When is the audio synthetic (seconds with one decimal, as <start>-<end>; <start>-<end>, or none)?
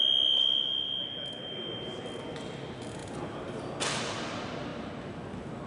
none